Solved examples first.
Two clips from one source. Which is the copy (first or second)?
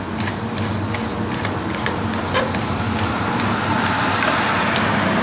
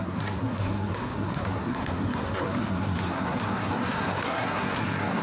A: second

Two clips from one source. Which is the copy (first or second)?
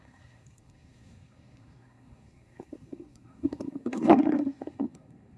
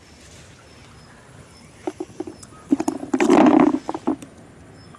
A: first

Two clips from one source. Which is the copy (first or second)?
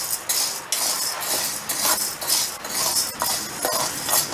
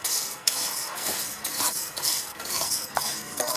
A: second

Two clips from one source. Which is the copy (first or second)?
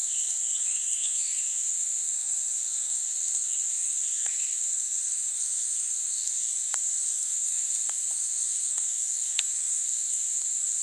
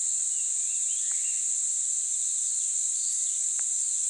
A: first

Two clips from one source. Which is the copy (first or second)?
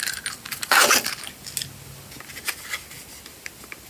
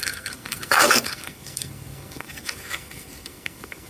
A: second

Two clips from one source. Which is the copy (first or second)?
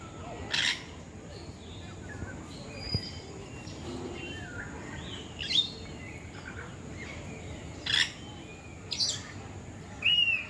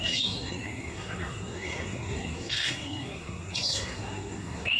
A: second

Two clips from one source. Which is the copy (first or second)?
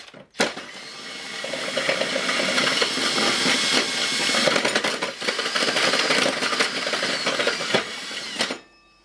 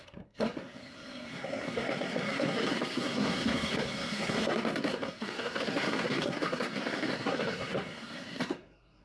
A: second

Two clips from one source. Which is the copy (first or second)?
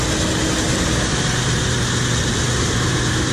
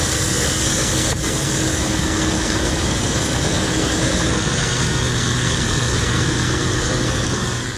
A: second